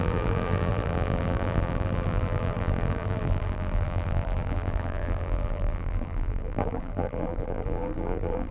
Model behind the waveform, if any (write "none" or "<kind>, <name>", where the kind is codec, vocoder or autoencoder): vocoder, BigVGAN v2